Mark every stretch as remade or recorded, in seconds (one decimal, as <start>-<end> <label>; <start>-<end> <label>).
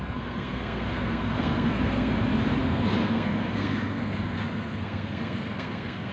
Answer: 0.0-2.1 remade; 2.1-2.6 recorded; 2.6-6.1 remade